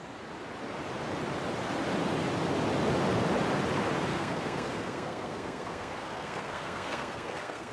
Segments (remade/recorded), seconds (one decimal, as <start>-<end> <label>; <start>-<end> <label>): 0.0-4.1 recorded; 4.1-7.7 remade